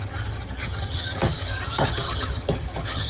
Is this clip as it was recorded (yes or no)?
no